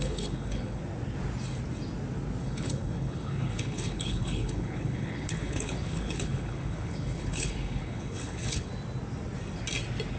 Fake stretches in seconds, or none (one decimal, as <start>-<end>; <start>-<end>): 0.0-0.8; 2.4-8.7